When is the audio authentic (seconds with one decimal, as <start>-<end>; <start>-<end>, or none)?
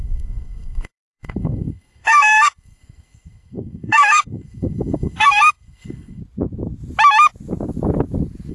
6.2-8.5